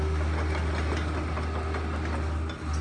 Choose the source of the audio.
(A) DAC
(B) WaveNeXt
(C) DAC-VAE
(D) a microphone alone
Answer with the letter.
D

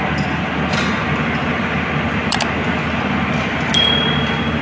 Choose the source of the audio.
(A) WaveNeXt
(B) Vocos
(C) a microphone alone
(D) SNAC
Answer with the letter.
C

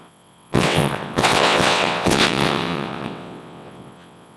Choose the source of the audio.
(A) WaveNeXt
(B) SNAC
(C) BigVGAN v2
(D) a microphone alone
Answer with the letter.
A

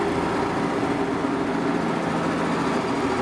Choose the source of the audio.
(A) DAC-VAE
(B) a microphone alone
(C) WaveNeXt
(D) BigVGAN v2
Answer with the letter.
B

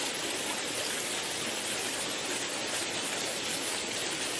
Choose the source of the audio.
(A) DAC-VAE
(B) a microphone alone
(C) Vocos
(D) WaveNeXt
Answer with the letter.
B